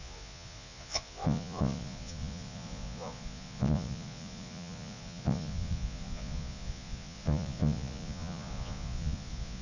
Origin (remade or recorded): remade